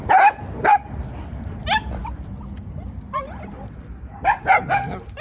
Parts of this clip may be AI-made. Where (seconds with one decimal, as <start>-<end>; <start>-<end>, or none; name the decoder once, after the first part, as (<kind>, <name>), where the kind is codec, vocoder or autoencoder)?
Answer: none